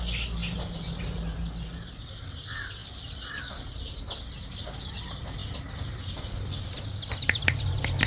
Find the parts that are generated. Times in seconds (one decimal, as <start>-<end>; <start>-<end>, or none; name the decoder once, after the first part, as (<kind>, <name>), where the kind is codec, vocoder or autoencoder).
none